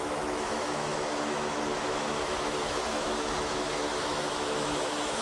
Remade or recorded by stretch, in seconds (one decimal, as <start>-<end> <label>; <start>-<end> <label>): 0.0-5.2 remade